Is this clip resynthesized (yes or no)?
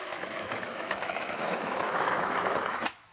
yes